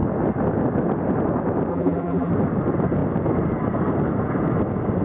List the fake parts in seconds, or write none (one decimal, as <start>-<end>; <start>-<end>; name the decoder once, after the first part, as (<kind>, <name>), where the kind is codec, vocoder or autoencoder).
1.7-2.3 (vocoder, BigVGAN v2)